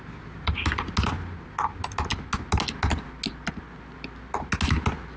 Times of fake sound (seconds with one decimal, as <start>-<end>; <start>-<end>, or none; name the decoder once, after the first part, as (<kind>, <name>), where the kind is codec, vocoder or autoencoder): none